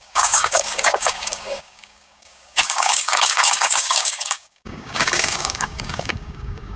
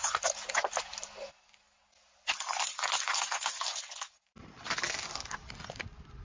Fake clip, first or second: first